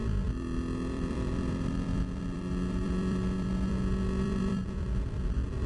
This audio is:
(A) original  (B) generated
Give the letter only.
B